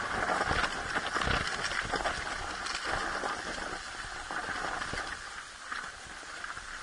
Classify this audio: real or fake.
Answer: real